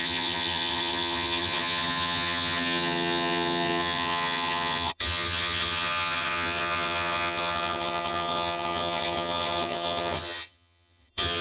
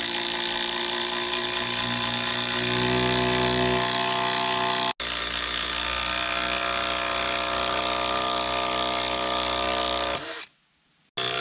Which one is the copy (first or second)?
first